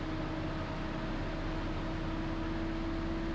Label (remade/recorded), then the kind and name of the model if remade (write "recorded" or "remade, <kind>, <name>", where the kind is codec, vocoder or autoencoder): recorded